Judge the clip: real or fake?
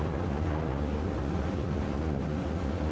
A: fake